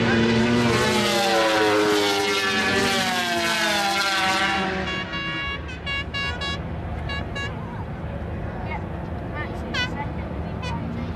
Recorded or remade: recorded